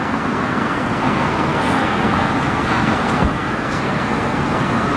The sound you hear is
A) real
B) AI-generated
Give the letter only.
B